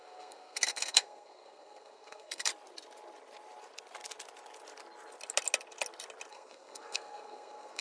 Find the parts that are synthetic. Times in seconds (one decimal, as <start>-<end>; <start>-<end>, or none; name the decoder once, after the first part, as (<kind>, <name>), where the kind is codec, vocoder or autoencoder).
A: 0.0-2.5 (codec, SNAC); 6.3-7.8